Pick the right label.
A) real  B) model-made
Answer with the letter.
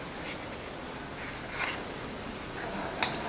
A